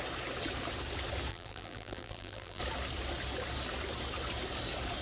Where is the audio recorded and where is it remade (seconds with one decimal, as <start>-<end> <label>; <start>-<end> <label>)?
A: 0.0-1.3 recorded; 1.3-2.6 remade; 2.6-5.0 recorded